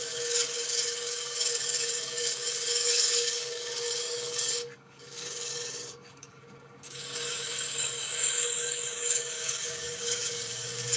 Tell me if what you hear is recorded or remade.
remade